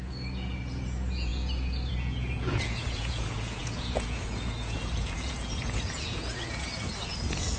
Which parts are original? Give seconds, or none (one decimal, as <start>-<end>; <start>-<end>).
none